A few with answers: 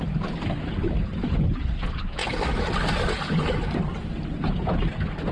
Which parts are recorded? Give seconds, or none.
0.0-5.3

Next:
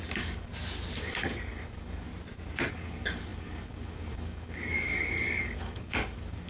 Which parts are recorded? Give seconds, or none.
0.5-1.0; 2.1-2.7

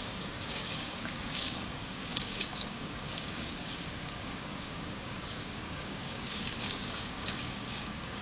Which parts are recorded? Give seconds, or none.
none